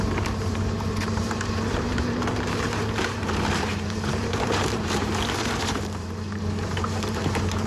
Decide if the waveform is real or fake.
fake